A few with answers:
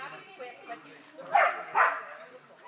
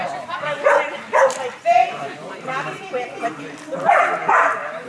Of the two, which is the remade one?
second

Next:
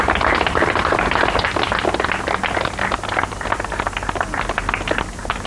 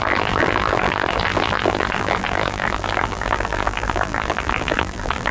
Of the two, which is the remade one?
second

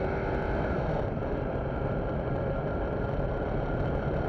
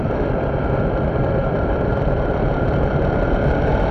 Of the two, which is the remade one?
second